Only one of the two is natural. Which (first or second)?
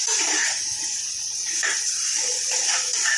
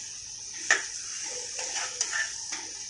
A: second